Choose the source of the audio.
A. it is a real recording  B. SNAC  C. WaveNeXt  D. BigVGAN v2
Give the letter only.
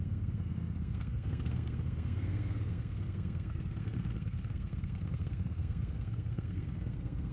B